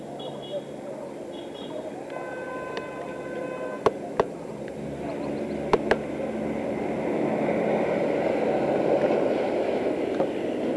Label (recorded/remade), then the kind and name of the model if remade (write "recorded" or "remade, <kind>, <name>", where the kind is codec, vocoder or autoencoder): recorded